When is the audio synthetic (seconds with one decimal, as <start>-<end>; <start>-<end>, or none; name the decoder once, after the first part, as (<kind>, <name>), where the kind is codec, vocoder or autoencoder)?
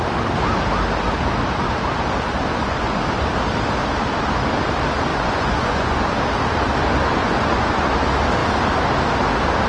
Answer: 2.5-3.0 (vocoder, Vocos); 5.1-6.0; 7.2-7.9